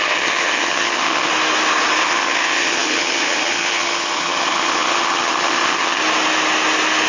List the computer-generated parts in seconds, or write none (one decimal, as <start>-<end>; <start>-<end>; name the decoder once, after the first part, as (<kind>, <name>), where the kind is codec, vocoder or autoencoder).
0.0-1.3 (vocoder, HiFi-GAN); 2.0-6.0